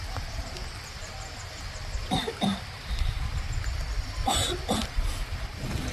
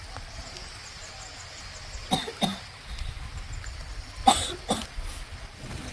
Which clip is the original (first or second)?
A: second